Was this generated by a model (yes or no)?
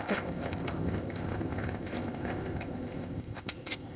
yes